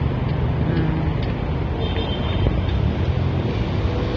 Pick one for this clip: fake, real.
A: real